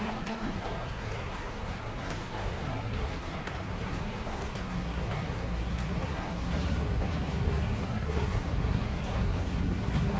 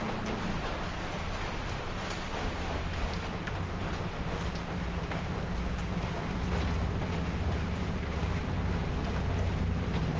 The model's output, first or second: first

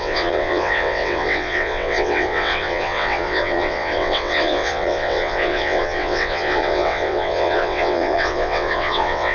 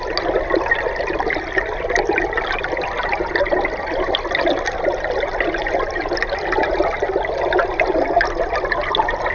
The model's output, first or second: first